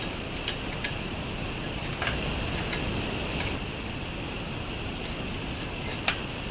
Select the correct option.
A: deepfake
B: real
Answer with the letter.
B